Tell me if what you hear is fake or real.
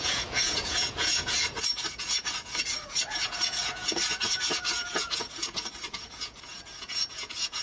fake